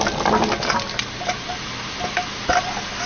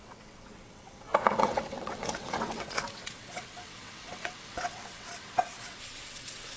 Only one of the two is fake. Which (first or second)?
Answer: second